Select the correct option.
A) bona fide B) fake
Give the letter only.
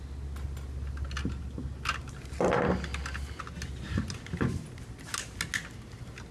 A